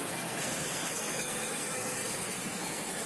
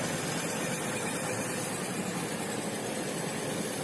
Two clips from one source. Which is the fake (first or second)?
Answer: first